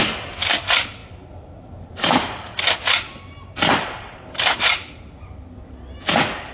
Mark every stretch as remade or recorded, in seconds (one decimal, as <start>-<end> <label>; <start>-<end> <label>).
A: 0.0-6.5 recorded